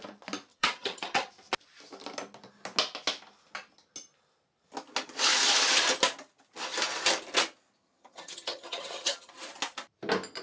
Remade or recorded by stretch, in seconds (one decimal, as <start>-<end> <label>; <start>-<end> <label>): 0.0-0.5 recorded; 0.5-1.3 remade; 1.3-7.8 recorded; 7.8-9.3 remade; 9.3-10.4 recorded